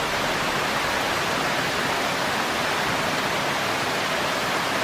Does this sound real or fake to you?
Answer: real